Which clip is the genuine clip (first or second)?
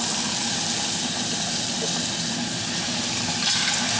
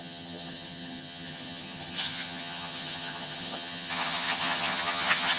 first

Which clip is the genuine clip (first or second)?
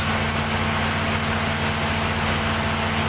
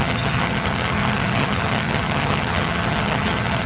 first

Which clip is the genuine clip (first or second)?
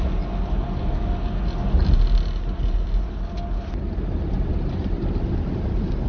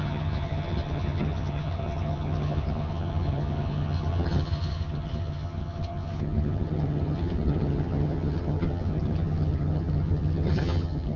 first